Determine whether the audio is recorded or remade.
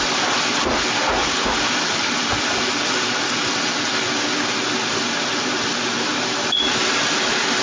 recorded